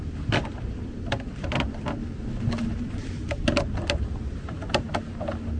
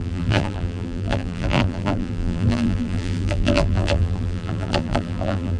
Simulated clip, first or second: second